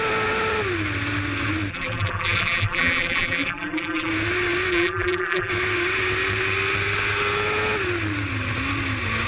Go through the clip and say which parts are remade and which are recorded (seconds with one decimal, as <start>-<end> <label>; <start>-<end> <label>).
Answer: 0.0-1.7 recorded; 1.7-4.1 remade; 4.1-4.7 recorded; 4.7-5.5 remade; 5.5-9.3 recorded